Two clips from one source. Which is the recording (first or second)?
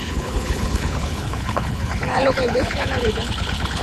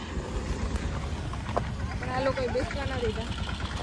second